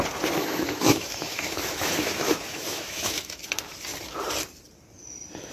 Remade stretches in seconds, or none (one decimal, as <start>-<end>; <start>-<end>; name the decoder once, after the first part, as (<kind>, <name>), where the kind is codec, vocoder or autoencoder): 0.4-3.4 (autoencoder, DAC-VAE)